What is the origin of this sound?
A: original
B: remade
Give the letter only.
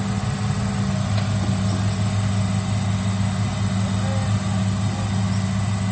A